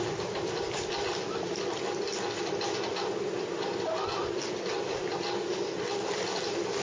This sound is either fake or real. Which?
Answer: real